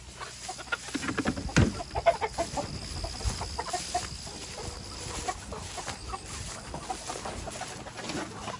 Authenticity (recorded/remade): recorded